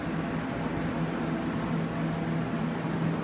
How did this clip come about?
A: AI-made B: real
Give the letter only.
B